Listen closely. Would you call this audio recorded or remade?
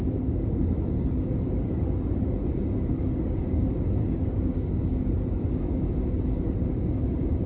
remade